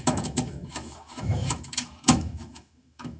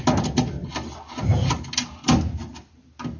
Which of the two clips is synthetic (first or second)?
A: first